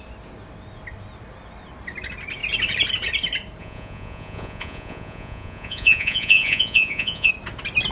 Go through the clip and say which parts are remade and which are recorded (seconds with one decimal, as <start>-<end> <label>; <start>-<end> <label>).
0.0-3.6 recorded; 3.6-7.3 remade; 7.3-7.9 recorded